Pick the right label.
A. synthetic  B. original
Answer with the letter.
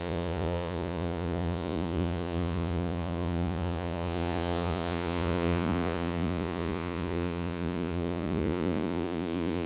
A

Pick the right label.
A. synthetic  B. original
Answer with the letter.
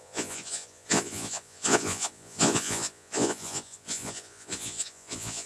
A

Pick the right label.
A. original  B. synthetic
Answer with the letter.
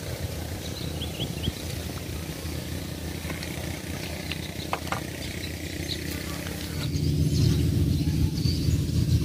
A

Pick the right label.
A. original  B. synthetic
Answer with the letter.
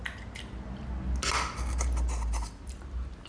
A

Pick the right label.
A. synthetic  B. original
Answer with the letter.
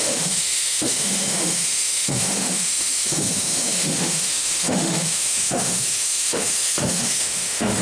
A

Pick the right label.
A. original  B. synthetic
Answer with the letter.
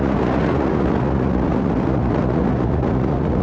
B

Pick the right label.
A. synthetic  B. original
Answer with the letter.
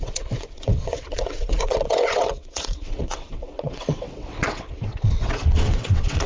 A